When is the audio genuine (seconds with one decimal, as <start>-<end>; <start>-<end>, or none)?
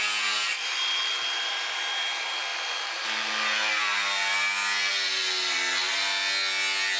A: 0.0-7.0